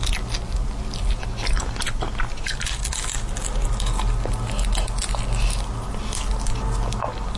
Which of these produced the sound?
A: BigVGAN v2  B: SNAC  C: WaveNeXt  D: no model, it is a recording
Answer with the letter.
D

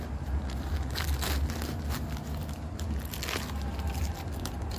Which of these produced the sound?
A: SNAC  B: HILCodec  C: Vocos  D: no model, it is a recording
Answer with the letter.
D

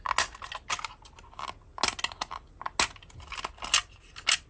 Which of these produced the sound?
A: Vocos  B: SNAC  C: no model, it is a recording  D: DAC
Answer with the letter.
C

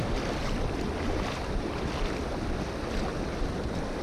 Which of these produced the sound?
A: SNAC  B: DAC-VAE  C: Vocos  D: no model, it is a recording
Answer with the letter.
D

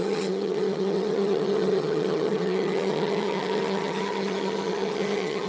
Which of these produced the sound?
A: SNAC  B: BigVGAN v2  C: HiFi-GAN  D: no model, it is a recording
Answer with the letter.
C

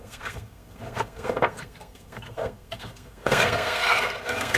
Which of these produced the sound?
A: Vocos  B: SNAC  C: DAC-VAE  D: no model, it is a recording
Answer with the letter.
B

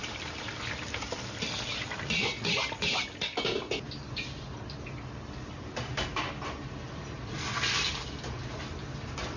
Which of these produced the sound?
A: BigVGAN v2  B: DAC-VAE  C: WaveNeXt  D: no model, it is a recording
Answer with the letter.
D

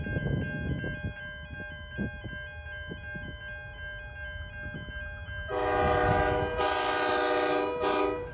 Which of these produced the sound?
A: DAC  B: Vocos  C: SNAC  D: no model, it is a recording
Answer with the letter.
D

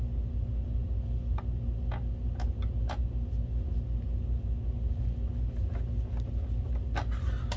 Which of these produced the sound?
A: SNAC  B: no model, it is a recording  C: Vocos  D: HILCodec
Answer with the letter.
B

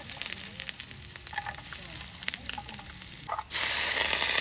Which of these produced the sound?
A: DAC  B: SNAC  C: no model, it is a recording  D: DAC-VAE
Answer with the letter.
C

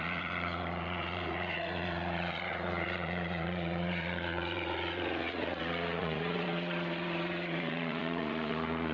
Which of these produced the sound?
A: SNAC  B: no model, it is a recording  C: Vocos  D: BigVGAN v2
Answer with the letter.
C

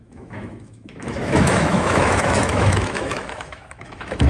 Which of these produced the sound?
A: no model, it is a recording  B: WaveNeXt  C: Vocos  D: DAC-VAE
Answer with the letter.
D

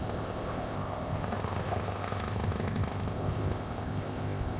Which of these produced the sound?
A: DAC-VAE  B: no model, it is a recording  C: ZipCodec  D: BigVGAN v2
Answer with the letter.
C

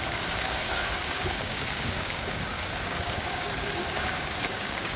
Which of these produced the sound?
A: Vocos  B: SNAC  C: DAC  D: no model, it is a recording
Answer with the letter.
C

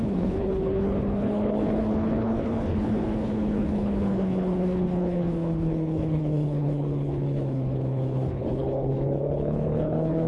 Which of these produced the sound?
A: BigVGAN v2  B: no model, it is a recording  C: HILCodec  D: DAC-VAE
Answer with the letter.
C